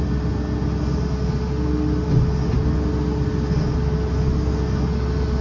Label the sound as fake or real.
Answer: real